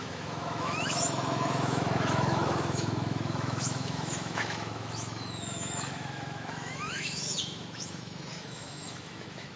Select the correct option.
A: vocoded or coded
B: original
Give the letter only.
A